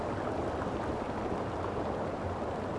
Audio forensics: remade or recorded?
recorded